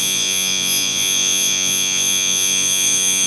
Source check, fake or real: fake